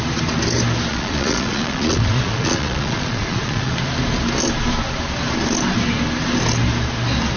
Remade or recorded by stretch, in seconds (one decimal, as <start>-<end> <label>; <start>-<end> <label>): 0.0-0.9 recorded; 0.9-3.7 remade; 3.7-7.4 recorded